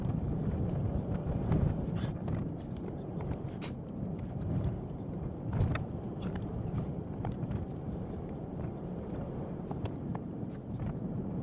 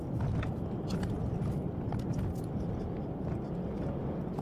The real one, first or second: second